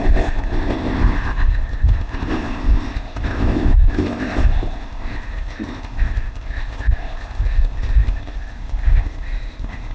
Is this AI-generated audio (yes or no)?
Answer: yes